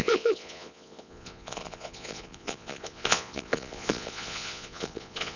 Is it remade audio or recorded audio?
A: remade